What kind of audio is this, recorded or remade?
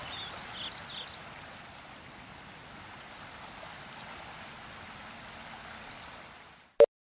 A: recorded